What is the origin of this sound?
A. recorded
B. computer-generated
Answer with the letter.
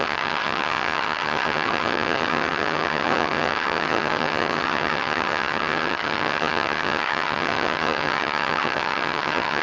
B